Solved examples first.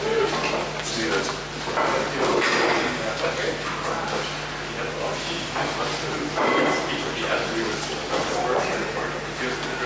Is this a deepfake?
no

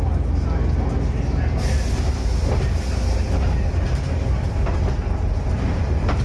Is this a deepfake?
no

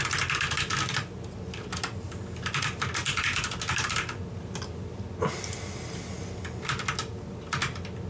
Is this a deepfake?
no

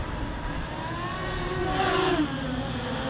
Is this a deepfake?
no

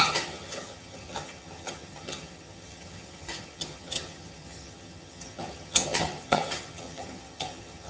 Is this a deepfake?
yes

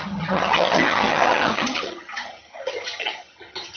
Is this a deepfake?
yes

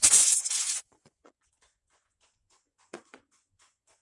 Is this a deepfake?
yes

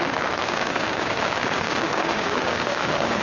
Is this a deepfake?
yes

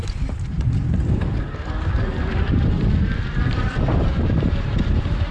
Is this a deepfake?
no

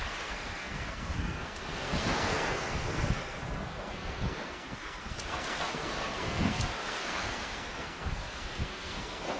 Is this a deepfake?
yes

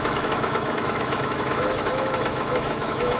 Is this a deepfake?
yes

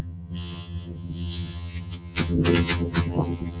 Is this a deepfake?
yes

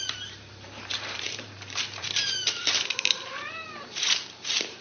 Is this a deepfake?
yes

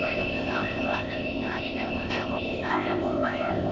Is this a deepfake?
yes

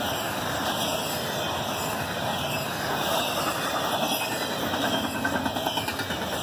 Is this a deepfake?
no